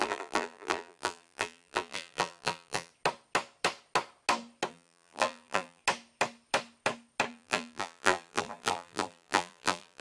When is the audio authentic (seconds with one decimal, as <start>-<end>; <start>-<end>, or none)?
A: 2.9-4.7; 5.8-7.3